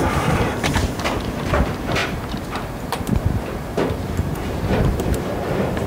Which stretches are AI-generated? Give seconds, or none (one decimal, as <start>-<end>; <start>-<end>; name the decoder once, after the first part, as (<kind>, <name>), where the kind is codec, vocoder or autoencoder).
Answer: 0.0-0.8 (vocoder, BigVGAN v2); 1.5-5.9